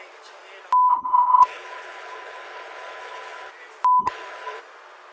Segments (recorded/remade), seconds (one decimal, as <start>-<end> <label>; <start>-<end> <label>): 0.0-0.9 recorded; 0.9-3.5 remade; 3.5-4.0 recorded; 4.0-4.6 remade; 4.6-5.1 recorded